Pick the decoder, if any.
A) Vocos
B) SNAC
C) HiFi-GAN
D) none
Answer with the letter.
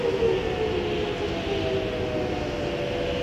D